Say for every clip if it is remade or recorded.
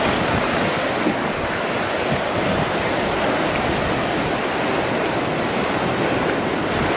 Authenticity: recorded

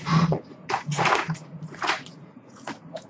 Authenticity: remade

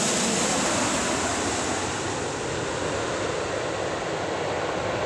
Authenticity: recorded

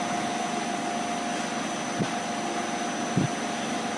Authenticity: recorded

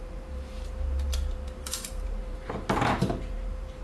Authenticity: remade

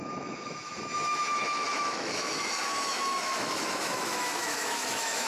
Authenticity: remade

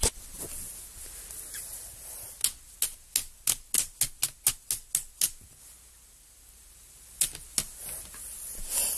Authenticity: recorded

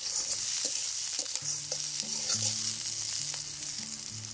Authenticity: recorded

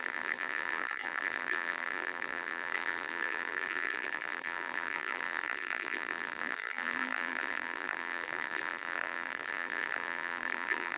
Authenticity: remade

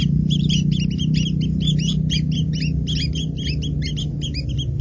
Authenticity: recorded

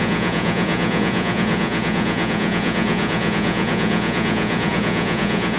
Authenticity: remade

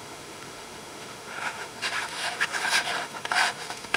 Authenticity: remade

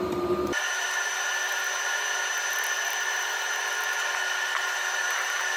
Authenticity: recorded